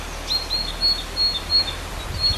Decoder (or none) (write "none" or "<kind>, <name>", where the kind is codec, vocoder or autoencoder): none